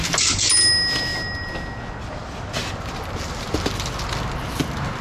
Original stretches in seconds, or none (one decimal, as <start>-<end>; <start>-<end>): 0.0-5.0